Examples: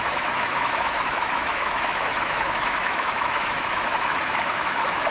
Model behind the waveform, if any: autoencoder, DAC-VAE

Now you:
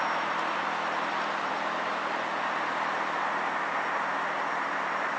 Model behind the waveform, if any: none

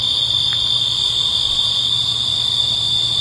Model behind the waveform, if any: none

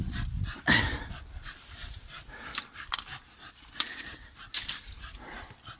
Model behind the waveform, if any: vocoder, BigVGAN v2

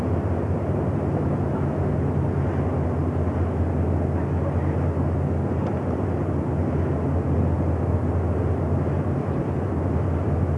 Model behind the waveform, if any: none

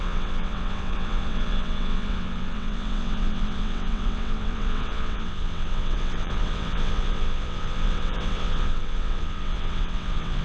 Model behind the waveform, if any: vocoder, WaveNeXt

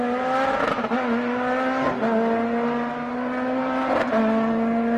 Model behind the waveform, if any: none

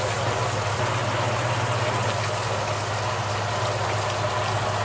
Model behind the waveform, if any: none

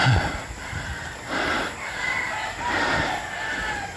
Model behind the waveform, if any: none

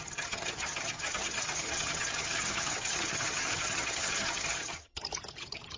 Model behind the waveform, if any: vocoder, HiFi-GAN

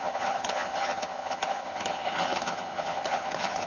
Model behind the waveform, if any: vocoder, HiFi-GAN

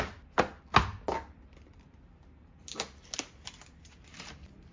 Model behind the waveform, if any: none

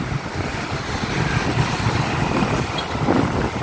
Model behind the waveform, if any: none